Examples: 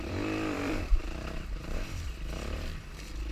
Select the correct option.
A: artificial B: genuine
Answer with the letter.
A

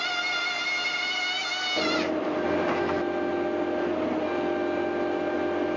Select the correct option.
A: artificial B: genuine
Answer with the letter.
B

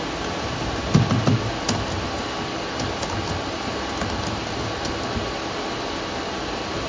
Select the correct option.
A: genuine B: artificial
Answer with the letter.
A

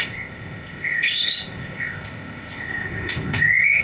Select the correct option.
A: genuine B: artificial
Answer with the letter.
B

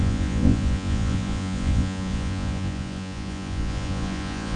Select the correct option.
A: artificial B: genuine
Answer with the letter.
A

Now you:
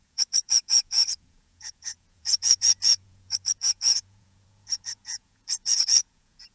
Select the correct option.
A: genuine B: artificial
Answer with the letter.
B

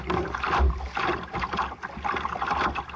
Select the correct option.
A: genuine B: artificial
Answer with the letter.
A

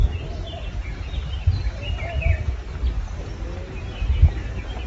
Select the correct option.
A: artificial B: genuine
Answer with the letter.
B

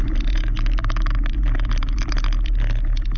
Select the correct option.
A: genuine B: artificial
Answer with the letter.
A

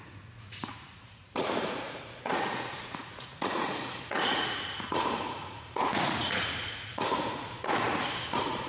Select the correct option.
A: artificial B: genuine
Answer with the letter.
A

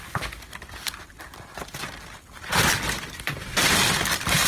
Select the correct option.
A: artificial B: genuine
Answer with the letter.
A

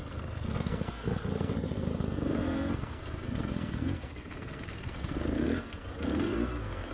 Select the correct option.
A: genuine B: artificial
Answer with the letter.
B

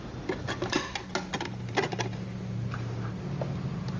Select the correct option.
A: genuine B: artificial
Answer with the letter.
A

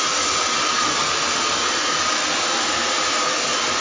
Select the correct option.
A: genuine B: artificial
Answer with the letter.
A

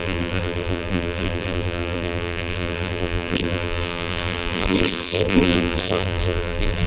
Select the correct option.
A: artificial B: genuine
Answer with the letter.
A